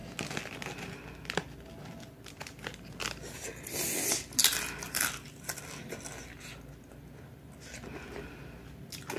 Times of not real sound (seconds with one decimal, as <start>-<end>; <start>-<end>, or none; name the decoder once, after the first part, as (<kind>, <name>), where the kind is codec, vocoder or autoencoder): none